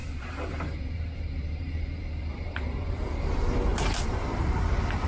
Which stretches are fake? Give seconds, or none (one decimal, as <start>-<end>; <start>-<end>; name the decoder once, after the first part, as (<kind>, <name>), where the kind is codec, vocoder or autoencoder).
0.0-3.1 (vocoder, BigVGAN v2); 3.7-5.1

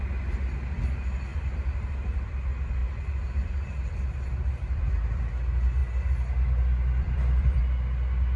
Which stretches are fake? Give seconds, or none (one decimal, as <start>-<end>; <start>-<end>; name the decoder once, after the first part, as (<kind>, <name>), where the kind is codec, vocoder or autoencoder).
1.3-2.3 (vocoder, BigVGAN v2); 2.8-5.3; 5.8-7.6